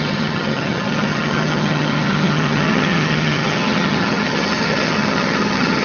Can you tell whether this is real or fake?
fake